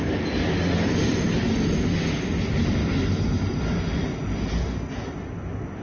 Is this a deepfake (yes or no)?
no